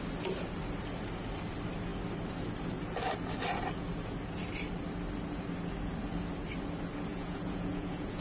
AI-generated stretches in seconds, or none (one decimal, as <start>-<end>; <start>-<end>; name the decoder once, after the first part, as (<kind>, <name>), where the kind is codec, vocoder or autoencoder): 7.1-8.2 (vocoder, Vocos)